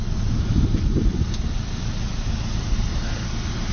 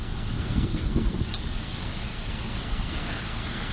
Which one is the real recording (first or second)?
first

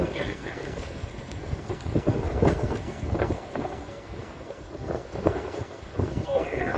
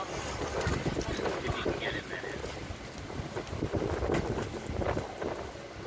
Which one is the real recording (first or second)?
second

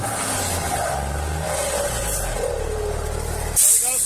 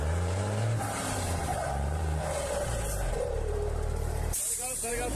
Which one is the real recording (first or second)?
first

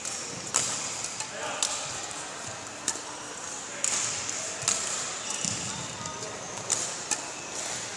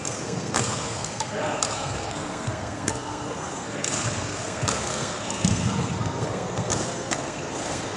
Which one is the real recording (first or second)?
first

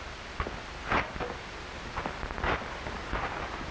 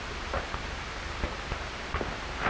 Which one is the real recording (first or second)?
first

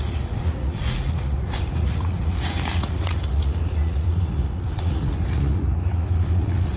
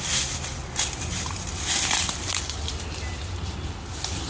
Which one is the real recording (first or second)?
second